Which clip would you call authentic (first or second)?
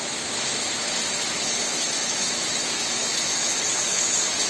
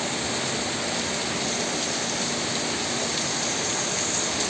second